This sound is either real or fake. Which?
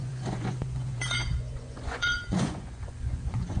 fake